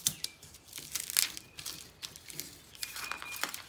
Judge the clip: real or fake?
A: real